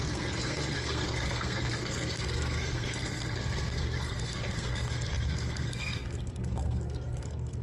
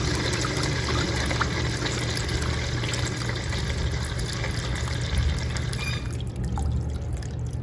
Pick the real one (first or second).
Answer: second